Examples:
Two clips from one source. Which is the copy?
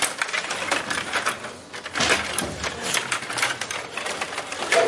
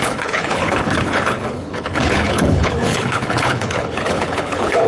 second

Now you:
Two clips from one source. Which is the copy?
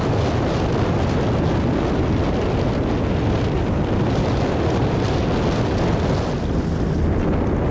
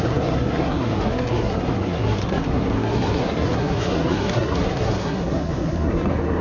second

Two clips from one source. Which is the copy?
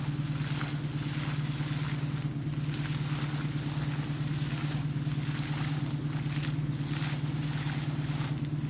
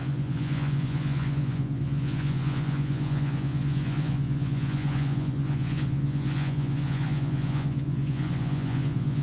second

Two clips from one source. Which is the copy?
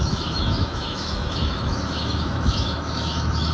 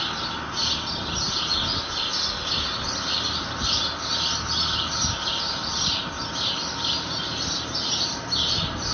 first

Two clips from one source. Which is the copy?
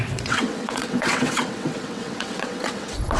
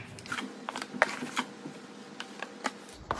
first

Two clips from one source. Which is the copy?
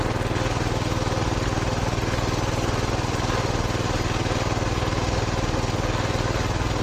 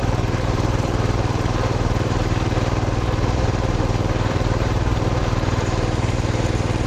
second